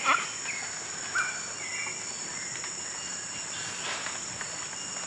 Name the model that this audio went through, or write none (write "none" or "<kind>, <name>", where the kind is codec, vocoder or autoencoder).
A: none